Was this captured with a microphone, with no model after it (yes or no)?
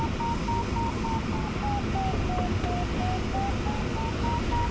yes